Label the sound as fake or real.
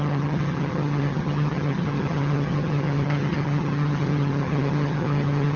fake